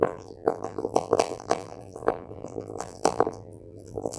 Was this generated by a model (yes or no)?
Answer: yes